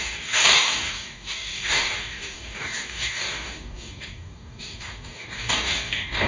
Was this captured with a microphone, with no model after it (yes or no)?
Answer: no